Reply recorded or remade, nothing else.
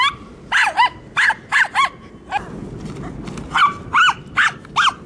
recorded